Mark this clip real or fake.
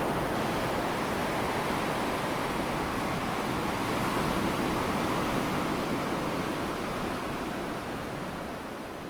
real